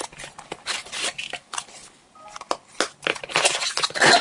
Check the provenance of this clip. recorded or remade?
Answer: recorded